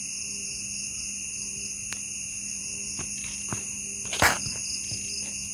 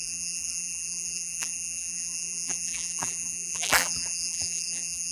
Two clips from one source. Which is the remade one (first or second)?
second